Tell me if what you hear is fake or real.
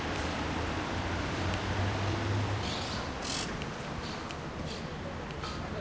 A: fake